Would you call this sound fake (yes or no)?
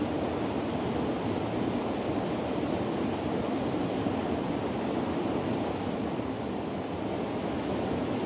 no